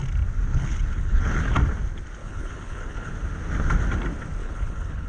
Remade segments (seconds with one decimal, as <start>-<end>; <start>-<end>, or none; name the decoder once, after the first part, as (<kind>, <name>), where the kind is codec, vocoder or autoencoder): 0.5-1.4 (codec, HILCodec); 2.2-3.1; 4.4-5.1